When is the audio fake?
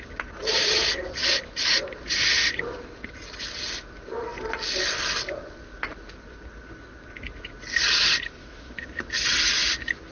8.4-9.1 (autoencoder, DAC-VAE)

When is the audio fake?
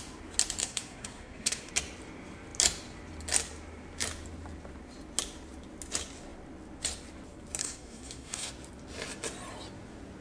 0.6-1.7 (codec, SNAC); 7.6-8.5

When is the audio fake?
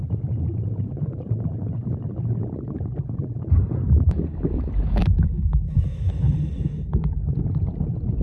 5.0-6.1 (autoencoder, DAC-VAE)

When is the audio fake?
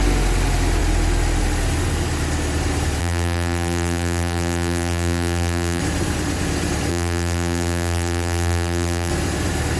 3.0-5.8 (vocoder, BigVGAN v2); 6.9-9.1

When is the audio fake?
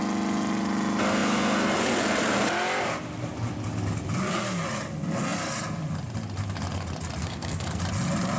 7.2-7.8 (codec, SNAC)